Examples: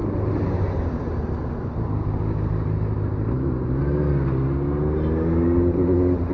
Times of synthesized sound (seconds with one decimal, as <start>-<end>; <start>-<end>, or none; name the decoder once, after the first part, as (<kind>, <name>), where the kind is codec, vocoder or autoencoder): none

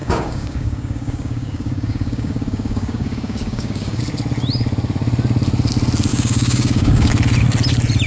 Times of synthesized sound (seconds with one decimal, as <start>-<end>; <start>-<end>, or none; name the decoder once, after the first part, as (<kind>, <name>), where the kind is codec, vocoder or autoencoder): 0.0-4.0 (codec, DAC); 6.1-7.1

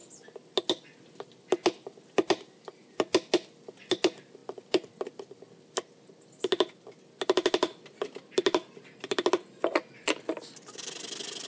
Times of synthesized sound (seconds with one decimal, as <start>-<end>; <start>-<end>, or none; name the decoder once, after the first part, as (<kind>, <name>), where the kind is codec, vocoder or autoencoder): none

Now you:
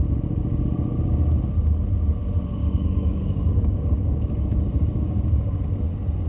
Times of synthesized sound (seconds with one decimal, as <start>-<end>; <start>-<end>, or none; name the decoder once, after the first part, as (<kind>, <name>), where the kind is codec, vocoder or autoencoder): 2.6-5.6 (codec, DAC)

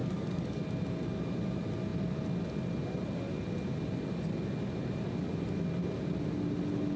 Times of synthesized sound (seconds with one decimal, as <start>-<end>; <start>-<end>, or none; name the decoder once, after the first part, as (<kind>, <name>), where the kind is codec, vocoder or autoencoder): 0.0-0.6 (codec, DAC)